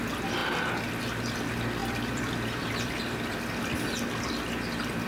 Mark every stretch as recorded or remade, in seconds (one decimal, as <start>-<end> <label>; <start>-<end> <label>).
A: 0.0-1.8 recorded; 1.8-3.0 remade; 3.0-5.1 recorded